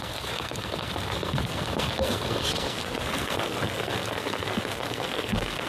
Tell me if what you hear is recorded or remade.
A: remade